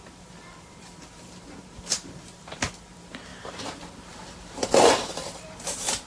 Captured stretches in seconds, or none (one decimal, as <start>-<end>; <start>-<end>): none